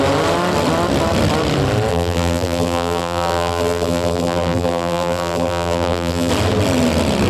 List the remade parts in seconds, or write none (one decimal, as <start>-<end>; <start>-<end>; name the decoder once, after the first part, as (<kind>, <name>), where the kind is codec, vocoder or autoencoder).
1.9-6.3 (vocoder, BigVGAN v2)